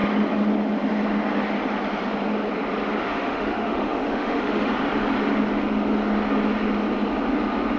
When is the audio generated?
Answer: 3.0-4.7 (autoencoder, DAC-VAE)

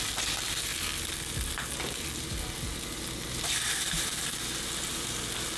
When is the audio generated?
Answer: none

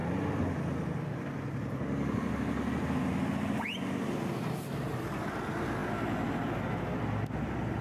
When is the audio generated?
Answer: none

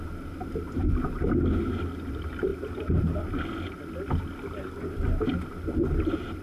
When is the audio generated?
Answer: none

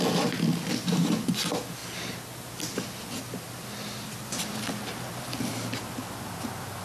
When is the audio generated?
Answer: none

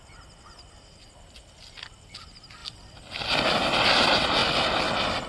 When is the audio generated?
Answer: none

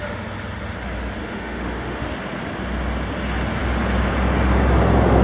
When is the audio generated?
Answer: 1.2-2.0 (autoencoder, DAC-VAE)

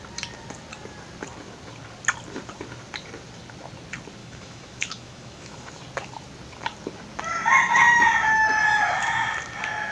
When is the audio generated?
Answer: 4.2-5.7 (autoencoder, DAC-VAE)